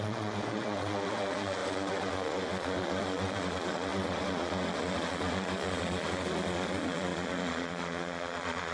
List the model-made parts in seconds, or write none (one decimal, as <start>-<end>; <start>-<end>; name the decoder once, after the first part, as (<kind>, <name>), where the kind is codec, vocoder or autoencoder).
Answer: 0.0-8.7 (vocoder, Vocos)